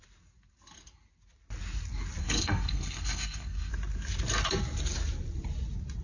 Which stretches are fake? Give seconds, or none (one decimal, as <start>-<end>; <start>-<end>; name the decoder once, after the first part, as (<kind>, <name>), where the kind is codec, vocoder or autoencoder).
2.2-3.7 (codec, SNAC)

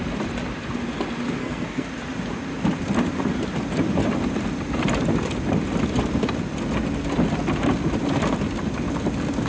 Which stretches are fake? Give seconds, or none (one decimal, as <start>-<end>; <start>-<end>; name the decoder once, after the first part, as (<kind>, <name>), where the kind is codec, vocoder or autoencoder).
1.4-1.9 (codec, SNAC)

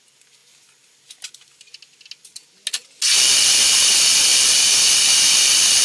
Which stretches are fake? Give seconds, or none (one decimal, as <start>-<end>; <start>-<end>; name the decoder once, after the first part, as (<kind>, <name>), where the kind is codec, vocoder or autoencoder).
none